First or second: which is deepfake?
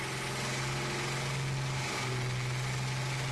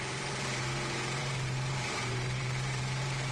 second